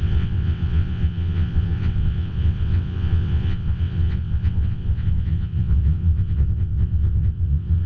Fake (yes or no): yes